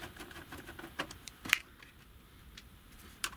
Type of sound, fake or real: fake